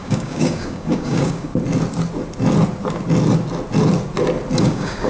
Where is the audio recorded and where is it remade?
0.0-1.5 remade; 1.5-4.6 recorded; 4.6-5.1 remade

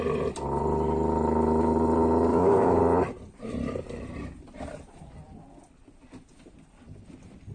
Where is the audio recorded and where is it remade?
0.0-2.3 recorded; 2.3-2.8 remade; 2.8-7.5 recorded